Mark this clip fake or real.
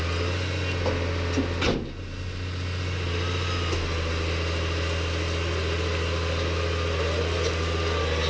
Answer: real